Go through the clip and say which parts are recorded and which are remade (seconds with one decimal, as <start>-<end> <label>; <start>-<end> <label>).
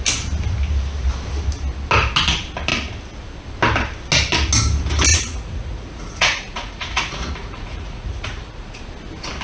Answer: 0.0-5.1 recorded; 5.1-8.8 remade; 8.8-9.4 recorded